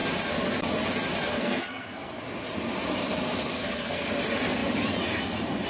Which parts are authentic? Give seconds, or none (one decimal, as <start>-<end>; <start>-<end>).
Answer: 0.0-1.3; 2.2-3.5; 4.1-5.7